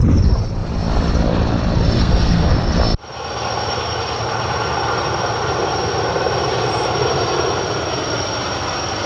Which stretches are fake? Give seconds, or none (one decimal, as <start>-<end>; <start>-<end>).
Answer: 2.0-2.5